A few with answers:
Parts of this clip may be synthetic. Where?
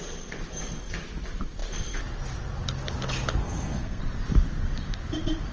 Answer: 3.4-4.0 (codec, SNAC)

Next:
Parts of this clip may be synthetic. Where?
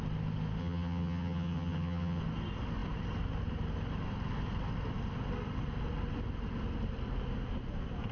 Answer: 0.6-2.2 (vocoder, HiFi-GAN)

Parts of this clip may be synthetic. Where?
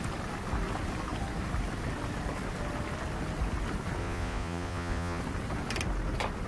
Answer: 4.0-5.2 (vocoder, Vocos)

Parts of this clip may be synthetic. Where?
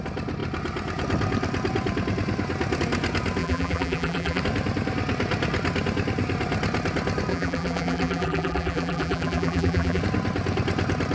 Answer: 3.4-4.4 (vocoder, BigVGAN v2); 7.3-10.0